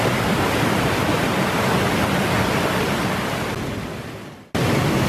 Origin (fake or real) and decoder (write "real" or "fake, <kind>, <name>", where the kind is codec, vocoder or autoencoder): real